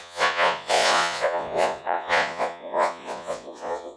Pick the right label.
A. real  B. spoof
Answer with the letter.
B